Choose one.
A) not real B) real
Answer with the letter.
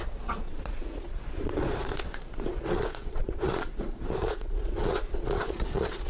A